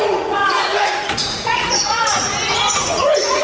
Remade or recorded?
remade